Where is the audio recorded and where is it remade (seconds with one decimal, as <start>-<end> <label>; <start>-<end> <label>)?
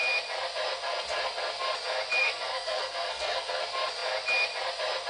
0.0-2.2 recorded; 2.2-3.6 remade; 3.6-5.1 recorded